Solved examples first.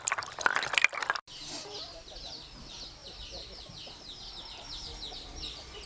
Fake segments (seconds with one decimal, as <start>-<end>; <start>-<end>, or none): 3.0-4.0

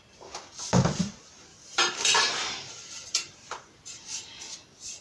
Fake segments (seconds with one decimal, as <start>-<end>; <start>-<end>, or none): 1.5-4.4

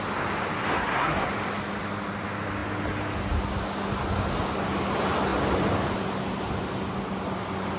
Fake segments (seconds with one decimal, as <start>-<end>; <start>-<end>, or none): 0.7-1.3

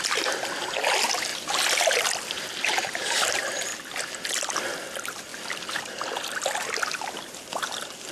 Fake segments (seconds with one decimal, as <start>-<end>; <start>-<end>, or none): none

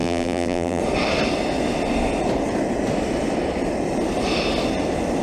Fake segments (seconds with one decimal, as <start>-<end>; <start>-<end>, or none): 0.0-0.8

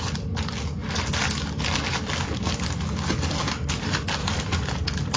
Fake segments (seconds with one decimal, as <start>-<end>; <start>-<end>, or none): 4.2-5.2